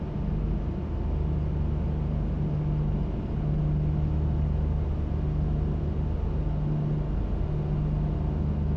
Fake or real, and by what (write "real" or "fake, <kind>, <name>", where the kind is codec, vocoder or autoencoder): real